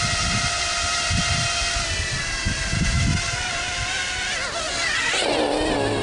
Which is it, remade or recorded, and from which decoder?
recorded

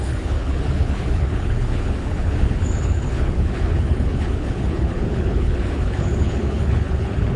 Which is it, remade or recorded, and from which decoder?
remade, codec, HILCodec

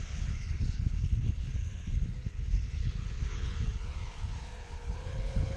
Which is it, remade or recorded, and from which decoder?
remade, codec, HILCodec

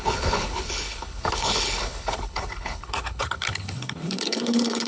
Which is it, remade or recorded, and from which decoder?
remade, codec, HILCodec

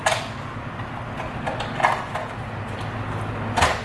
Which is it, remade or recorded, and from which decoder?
recorded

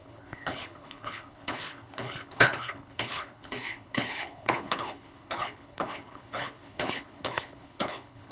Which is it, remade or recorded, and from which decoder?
remade, codec, HILCodec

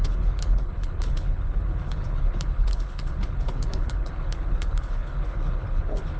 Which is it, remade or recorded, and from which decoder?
remade, codec, HILCodec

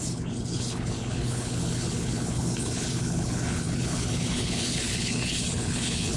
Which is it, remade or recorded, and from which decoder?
remade, codec, HILCodec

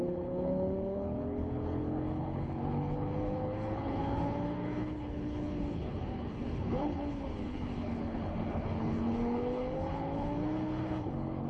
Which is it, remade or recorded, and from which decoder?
remade, codec, HILCodec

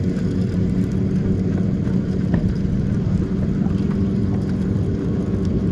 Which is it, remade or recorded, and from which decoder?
recorded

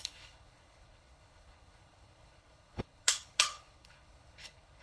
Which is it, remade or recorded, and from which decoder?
remade, codec, HILCodec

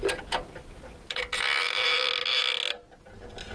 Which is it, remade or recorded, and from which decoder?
recorded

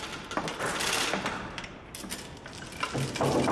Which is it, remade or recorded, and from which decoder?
recorded